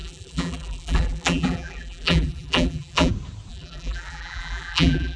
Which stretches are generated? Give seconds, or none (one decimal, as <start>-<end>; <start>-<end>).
0.0-3.1; 3.5-5.2